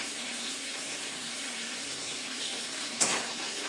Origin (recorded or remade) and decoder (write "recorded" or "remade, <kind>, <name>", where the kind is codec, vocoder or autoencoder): remade, codec, SNAC